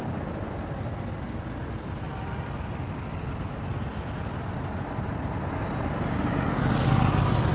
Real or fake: real